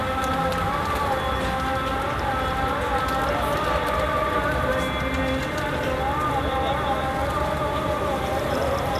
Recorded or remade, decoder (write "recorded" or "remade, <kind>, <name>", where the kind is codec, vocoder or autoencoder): recorded